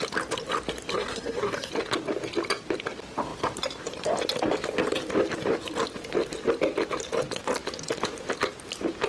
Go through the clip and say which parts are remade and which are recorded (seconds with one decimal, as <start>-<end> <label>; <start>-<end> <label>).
0.0-0.9 recorded; 0.9-1.7 remade; 1.7-9.1 recorded